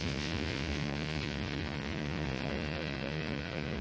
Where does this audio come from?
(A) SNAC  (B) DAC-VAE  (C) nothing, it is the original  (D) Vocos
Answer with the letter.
D